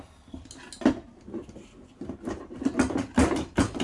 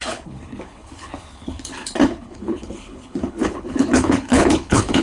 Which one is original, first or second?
first